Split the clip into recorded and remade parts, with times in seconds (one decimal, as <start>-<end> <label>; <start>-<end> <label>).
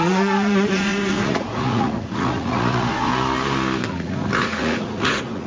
0.0-3.1 remade; 3.1-3.9 recorded; 3.9-5.5 remade